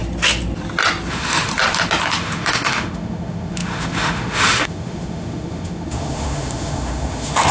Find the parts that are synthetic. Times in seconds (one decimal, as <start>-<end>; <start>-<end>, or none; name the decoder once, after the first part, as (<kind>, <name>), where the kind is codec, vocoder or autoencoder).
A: 1.1-1.5 (autoencoder, DAC-VAE); 2.2-7.5